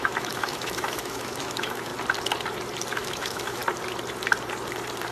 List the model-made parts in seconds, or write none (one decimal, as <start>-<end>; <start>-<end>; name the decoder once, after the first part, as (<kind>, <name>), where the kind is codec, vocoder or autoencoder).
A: 0.0-1.9 (autoencoder, DAC-VAE); 2.9-3.6